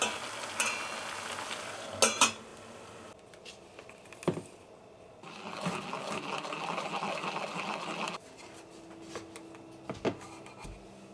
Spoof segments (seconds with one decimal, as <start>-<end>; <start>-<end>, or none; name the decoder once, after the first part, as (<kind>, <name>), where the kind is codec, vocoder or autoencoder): none